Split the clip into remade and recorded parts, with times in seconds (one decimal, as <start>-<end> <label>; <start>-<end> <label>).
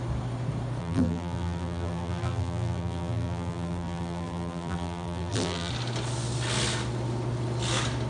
0.0-0.8 recorded; 0.8-5.7 remade; 5.7-8.1 recorded